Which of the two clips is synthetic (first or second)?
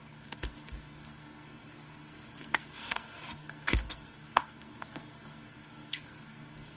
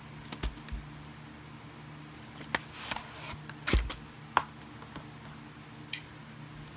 first